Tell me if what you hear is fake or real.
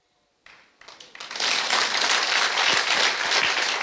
fake